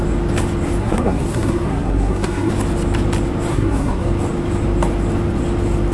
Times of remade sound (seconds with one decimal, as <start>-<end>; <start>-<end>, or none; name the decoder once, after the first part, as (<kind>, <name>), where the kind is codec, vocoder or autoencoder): 0.8-2.5 (codec, SNAC); 3.5-4.1